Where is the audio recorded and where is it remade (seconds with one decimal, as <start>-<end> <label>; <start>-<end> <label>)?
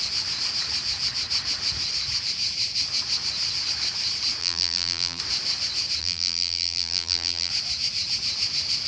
0.0-4.4 recorded; 4.4-5.2 remade; 5.2-6.0 recorded; 6.0-7.5 remade; 7.5-8.9 recorded